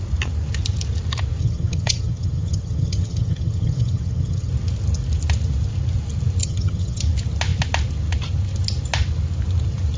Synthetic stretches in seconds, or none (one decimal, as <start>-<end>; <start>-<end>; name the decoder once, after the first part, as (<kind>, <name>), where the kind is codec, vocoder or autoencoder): 1.4-4.5 (vocoder, HiFi-GAN); 6.4-7.0